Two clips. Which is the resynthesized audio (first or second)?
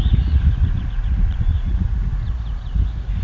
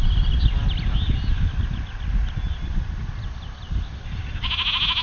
first